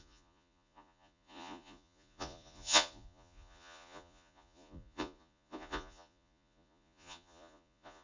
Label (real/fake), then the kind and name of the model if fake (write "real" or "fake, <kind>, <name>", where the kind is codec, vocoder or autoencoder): fake, vocoder, Vocos